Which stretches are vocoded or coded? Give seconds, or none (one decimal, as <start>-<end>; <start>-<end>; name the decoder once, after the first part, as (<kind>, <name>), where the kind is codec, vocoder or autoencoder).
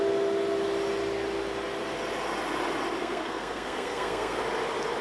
3.0-4.4 (codec, SNAC)